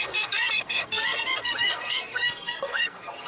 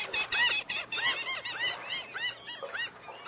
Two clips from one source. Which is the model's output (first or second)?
first